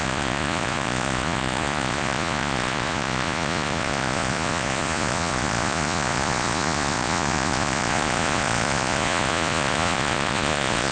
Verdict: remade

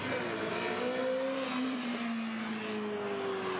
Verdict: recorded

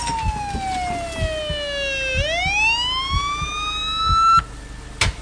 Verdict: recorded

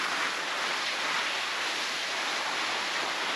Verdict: recorded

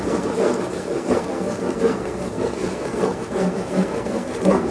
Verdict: remade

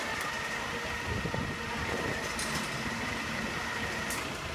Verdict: recorded